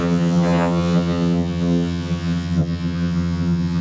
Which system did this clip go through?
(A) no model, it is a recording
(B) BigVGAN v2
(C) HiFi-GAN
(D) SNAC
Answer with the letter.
C